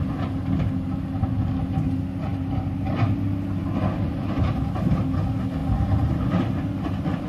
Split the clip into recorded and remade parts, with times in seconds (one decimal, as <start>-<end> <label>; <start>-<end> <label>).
0.0-7.3 recorded